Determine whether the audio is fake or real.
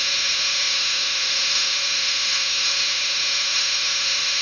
fake